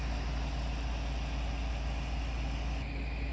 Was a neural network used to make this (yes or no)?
no